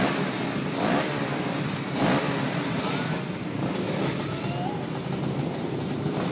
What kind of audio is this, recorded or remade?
recorded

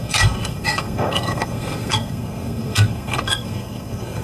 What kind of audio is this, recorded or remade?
remade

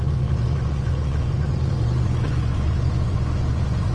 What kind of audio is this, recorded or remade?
remade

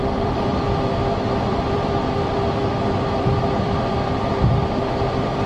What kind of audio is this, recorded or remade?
remade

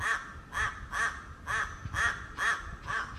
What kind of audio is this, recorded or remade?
recorded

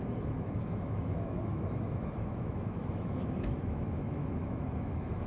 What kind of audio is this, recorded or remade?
remade